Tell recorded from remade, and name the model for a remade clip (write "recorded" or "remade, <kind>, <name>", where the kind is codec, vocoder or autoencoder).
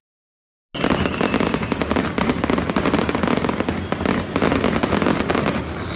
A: recorded